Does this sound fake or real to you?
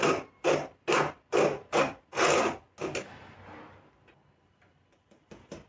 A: real